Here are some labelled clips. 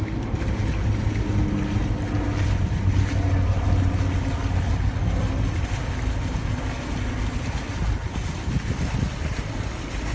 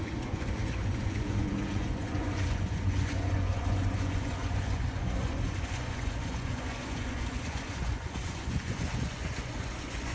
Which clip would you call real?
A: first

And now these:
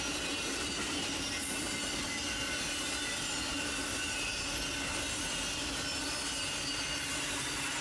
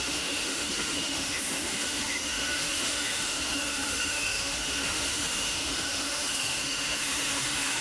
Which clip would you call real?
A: first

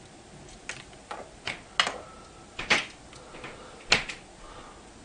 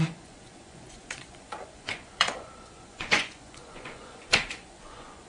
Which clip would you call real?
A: first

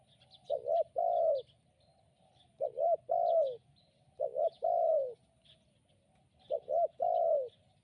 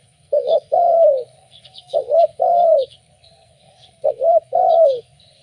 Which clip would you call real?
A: first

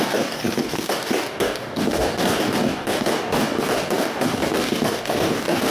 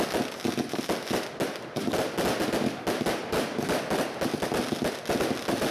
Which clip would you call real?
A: second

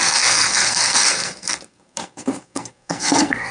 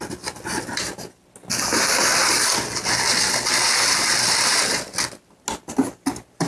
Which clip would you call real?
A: second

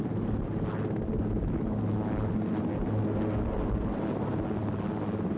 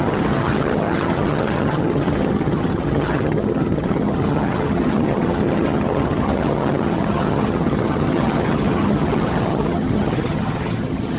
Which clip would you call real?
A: first